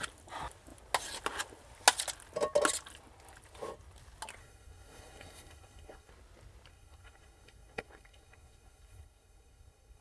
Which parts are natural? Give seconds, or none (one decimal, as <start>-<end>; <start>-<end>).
0.0-4.4; 6.1-6.7

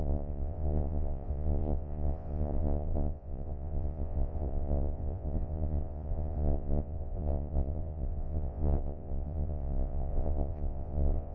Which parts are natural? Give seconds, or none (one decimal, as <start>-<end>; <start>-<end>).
none

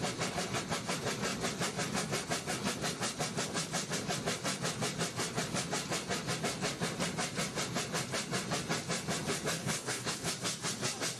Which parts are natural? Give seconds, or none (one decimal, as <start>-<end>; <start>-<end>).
0.0-9.6; 10.3-11.2

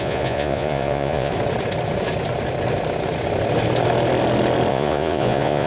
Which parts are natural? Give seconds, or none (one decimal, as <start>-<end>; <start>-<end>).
1.3-4.7

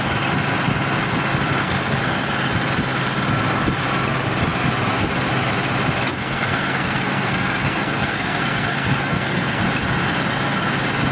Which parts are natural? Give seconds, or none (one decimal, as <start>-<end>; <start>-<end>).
0.0-1.6; 2.3-6.2; 9.6-11.1

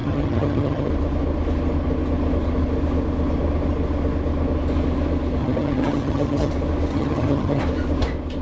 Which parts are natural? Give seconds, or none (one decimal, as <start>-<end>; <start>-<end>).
0.9-5.4; 6.5-6.9; 7.6-8.4

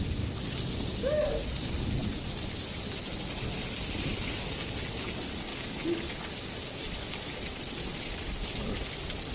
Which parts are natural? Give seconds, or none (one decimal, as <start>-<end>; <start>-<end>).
0.0-9.3